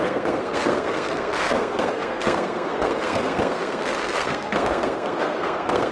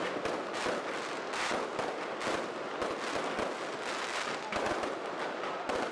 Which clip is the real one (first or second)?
second